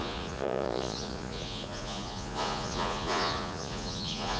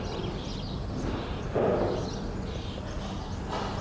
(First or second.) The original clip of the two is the second